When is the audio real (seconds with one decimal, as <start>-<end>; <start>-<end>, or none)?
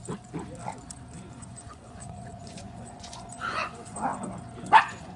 0.0-1.3; 4.1-4.8